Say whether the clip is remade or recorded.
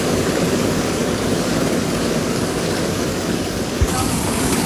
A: remade